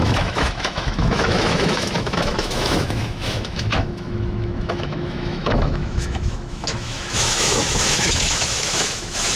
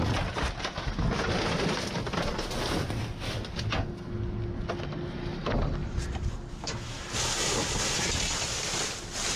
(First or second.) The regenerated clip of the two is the first